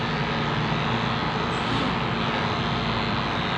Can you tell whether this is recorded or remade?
recorded